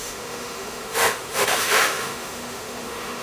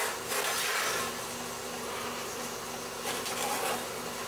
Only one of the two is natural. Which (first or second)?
second